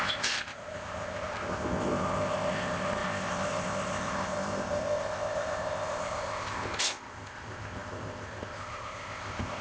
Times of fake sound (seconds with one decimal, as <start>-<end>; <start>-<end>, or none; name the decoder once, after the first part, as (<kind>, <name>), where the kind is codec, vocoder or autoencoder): 0.0-9.6 (codec, ZipCodec)